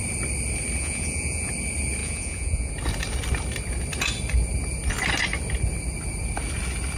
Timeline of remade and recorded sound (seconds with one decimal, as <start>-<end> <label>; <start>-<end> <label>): 0.0-0.8 recorded; 0.8-1.5 remade; 1.5-2.0 recorded; 2.0-2.7 remade; 2.7-7.0 recorded